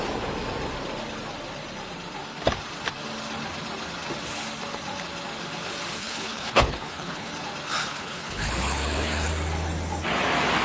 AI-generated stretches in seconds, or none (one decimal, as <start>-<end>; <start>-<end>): 6.0-7.3; 7.8-9.3